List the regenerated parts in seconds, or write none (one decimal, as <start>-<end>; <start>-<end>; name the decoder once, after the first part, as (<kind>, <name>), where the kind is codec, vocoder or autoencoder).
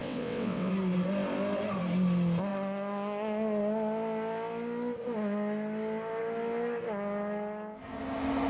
0.0-0.7 (vocoder, WaveNeXt)